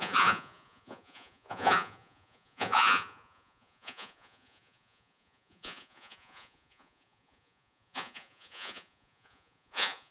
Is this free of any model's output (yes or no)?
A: no